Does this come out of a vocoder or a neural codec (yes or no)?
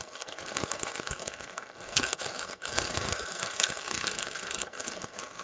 yes